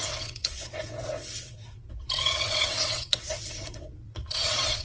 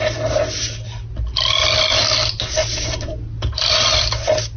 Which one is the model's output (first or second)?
first